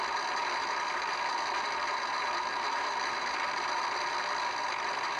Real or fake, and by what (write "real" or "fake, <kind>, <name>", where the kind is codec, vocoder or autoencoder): real